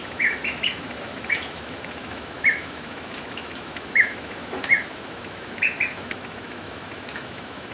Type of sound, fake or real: fake